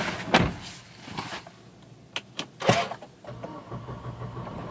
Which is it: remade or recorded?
recorded